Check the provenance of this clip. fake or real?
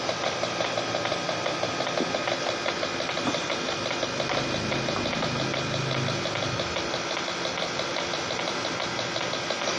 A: real